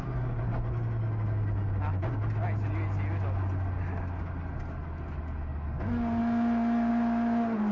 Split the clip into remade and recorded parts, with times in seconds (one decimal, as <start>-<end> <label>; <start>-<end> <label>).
0.0-7.7 recorded

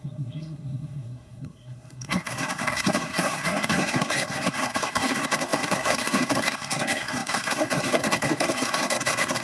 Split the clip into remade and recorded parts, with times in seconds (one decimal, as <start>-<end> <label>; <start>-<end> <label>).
0.0-9.4 remade

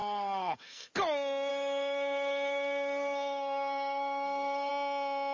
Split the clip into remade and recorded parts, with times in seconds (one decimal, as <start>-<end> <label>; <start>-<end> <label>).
0.0-0.9 remade; 0.9-1.5 recorded; 1.5-4.7 remade; 4.7-5.3 recorded

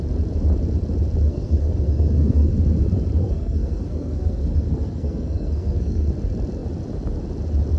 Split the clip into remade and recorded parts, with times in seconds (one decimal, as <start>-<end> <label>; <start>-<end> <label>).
0.0-1.3 recorded; 1.3-2.5 remade; 2.5-3.2 recorded; 3.2-6.1 remade; 6.1-7.8 recorded

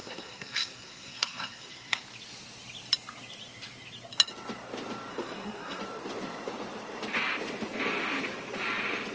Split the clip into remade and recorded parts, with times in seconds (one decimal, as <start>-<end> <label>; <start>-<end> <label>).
0.0-2.0 remade; 2.0-5.1 recorded; 5.1-5.8 remade; 5.8-9.1 recorded

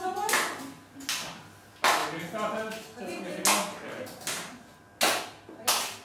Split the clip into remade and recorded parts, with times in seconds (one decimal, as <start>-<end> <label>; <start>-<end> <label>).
0.0-6.0 recorded

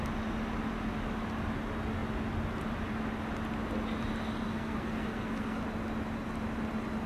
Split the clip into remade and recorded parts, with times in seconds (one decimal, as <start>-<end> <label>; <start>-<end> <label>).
0.0-4.5 recorded; 4.5-5.6 remade; 5.6-7.1 recorded